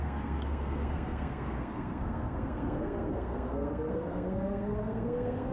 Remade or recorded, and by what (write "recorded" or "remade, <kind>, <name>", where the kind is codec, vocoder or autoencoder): remade, codec, SNAC